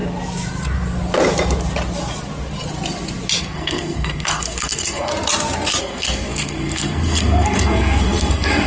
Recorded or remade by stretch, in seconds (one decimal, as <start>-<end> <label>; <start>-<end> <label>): 0.0-3.4 recorded; 3.4-5.1 remade; 5.1-5.8 recorded; 5.8-8.7 remade